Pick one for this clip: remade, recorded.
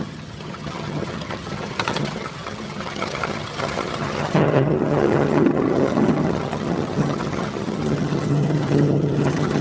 remade